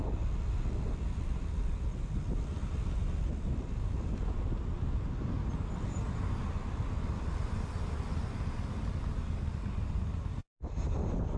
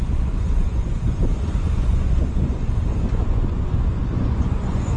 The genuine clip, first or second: first